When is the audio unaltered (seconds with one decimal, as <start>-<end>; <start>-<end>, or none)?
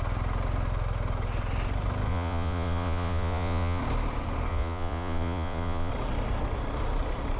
0.0-2.1; 3.8-4.5; 5.9-7.4